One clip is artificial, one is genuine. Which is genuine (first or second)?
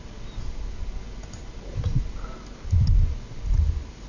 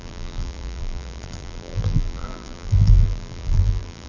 first